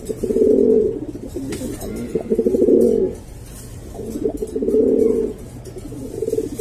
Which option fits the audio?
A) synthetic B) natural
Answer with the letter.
B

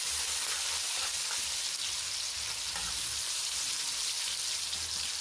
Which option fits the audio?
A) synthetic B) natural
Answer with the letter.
B